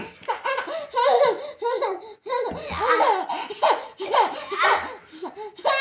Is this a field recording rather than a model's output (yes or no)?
yes